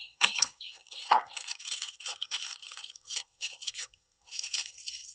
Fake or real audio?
fake